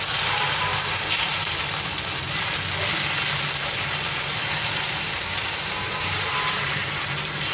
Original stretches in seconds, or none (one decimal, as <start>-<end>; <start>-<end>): 0.0-0.7; 1.9-3.6